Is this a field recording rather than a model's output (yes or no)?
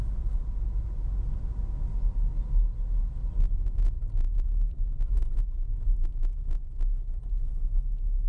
yes